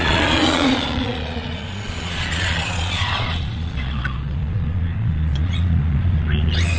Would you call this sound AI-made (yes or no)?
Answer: yes